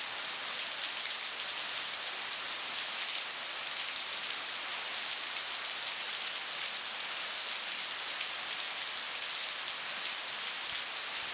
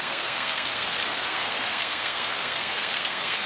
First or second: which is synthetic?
second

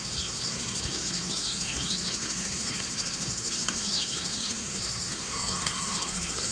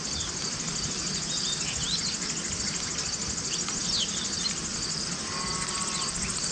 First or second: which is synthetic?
first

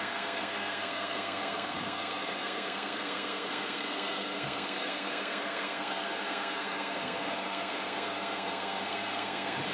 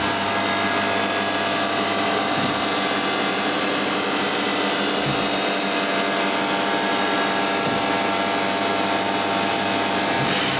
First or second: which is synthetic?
first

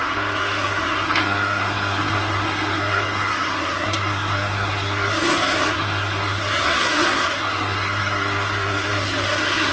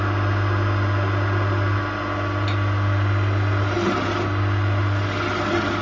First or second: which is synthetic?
first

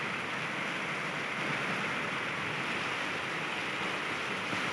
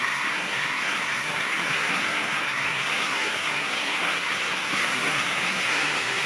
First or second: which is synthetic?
second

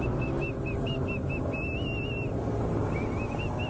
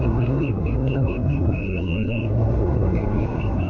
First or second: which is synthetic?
second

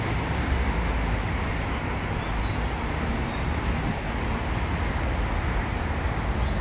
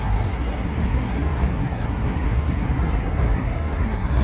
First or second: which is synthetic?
second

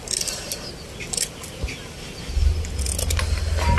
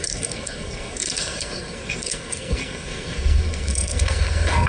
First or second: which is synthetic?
second